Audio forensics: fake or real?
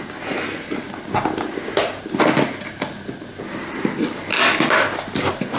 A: real